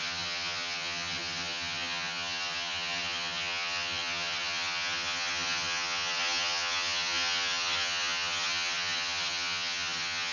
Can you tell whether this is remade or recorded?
remade